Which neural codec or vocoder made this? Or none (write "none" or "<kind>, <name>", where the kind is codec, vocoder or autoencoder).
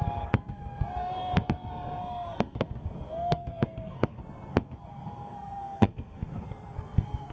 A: codec, SNAC